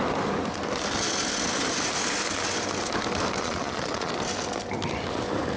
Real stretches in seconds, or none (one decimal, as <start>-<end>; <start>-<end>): 0.0-3.4; 4.1-5.6